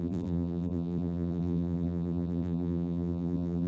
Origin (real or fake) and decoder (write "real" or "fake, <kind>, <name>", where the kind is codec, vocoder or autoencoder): fake, vocoder, BigVGAN v2